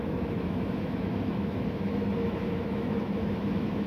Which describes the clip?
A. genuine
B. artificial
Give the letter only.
B